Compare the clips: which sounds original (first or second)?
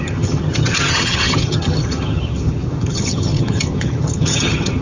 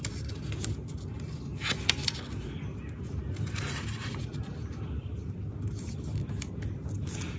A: second